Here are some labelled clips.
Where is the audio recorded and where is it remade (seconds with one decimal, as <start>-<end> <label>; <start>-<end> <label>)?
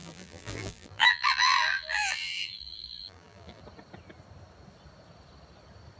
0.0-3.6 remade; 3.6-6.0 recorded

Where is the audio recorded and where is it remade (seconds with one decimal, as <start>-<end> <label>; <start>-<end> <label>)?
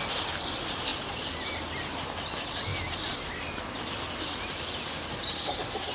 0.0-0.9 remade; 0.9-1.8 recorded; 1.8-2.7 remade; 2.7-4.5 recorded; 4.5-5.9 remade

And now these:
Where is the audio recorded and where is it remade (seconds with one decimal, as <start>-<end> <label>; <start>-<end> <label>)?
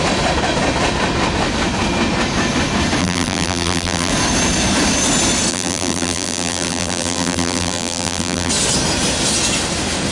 0.0-3.0 recorded; 3.0-4.1 remade; 4.1-5.5 recorded; 5.5-8.5 remade; 8.5-10.1 recorded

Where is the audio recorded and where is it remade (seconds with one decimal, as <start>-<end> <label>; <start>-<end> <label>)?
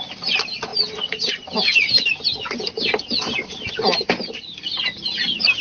0.0-5.6 recorded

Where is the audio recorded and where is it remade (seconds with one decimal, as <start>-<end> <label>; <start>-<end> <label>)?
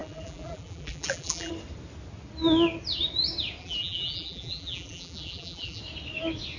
0.0-1.5 remade; 1.5-3.6 recorded; 3.6-5.8 remade; 5.8-6.6 recorded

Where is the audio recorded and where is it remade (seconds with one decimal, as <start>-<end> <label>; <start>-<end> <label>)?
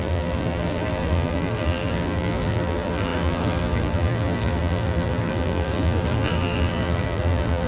0.0-7.7 remade